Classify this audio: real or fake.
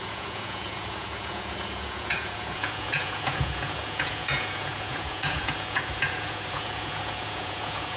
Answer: fake